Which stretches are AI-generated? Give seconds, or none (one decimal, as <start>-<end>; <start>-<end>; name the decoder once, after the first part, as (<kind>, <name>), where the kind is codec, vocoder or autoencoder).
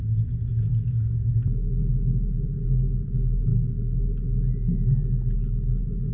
0.5-1.8 (autoencoder, DAC-VAE)